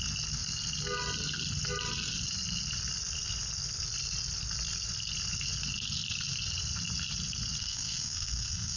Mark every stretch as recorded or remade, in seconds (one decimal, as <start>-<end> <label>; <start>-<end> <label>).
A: 0.0-7.6 recorded; 7.6-8.8 remade

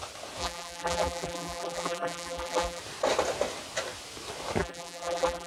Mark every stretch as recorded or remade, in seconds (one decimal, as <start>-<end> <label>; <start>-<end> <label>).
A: 0.0-0.4 recorded; 0.4-2.8 remade; 2.8-4.6 recorded; 4.6-5.5 remade

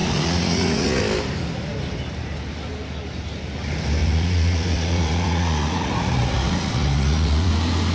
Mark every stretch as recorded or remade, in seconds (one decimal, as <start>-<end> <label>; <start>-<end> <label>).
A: 0.0-1.0 remade; 1.0-4.0 recorded; 4.0-7.5 remade; 7.5-7.9 recorded

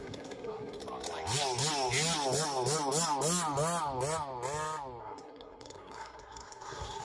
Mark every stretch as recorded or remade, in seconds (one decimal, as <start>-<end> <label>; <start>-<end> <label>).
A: 0.0-0.8 remade; 0.8-5.0 recorded; 5.0-7.0 remade